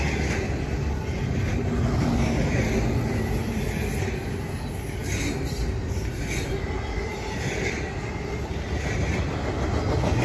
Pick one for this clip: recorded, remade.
recorded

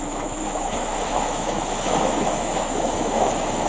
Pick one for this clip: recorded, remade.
remade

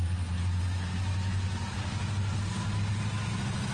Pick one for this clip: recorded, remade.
recorded